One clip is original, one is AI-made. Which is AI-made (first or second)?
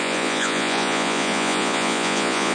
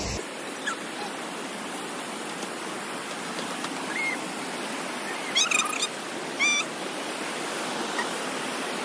first